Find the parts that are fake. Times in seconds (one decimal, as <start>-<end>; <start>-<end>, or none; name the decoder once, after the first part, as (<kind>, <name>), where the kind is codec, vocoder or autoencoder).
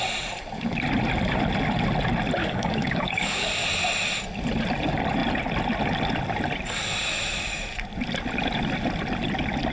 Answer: 2.4-3.5 (codec, DAC)